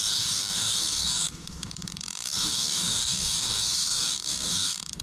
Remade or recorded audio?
remade